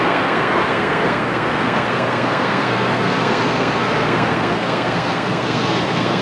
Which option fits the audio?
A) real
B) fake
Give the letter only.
B